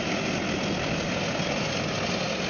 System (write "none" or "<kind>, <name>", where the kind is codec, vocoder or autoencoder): none